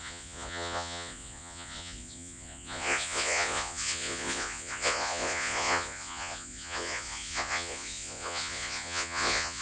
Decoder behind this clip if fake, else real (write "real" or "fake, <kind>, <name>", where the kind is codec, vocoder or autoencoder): fake, vocoder, Vocos